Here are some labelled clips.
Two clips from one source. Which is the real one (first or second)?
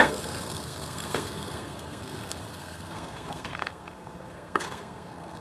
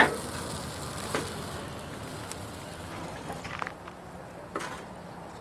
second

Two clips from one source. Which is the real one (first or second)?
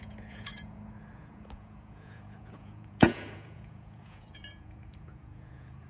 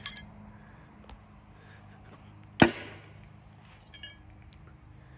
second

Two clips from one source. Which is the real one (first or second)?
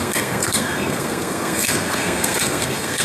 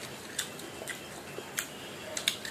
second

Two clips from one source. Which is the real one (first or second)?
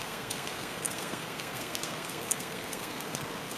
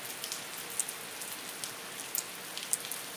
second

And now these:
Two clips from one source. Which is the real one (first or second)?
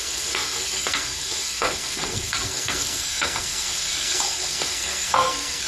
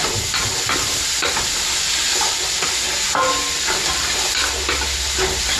second